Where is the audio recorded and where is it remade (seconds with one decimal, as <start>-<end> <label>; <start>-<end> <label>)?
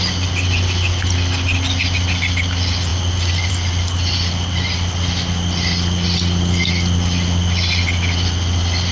0.0-8.9 recorded